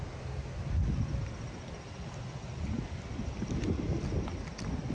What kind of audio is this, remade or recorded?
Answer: recorded